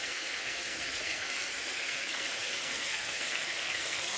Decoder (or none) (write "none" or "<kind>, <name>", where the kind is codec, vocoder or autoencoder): codec, SNAC